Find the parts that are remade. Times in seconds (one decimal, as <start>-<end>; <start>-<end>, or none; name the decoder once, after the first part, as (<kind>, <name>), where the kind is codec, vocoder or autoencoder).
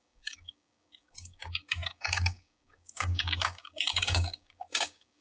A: 0.0-5.2 (codec, DAC)